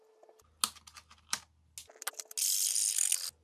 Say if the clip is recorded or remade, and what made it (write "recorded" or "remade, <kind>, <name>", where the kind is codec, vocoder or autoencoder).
recorded